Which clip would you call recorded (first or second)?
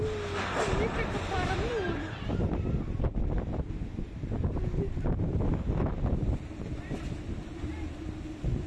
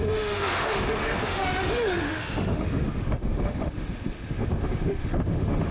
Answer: first